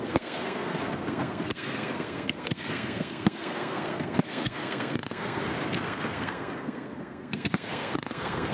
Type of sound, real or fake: fake